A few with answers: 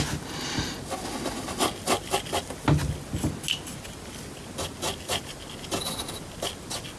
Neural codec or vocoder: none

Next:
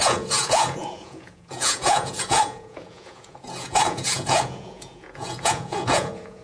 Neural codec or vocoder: vocoder, Vocos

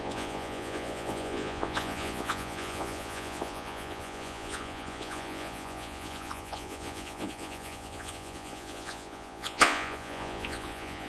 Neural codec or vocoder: vocoder, Vocos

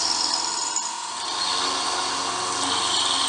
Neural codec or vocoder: none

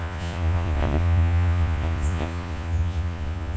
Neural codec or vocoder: vocoder, Vocos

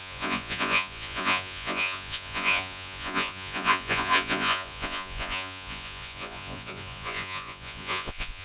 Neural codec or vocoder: vocoder, Vocos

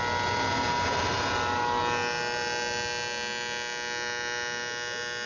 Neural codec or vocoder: none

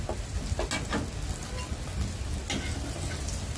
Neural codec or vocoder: none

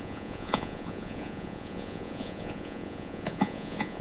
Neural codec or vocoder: vocoder, Vocos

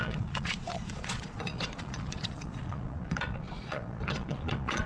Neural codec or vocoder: vocoder, Vocos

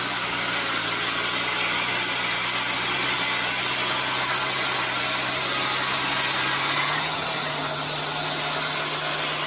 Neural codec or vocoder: none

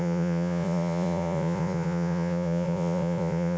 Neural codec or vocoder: vocoder, Vocos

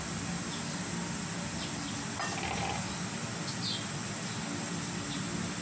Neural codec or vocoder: none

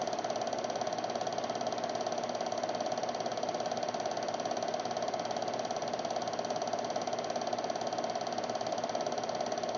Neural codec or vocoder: none